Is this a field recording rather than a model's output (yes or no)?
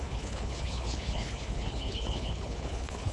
no